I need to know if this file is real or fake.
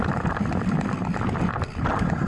real